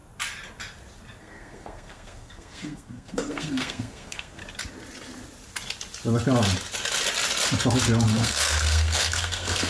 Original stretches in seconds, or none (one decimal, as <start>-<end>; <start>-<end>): 0.0-1.2; 4.4-8.1